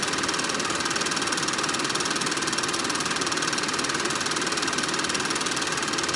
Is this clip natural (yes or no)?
yes